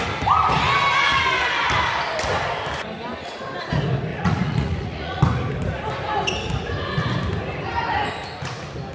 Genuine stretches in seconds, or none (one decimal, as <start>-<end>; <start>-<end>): 0.0-4.1; 5.2-8.9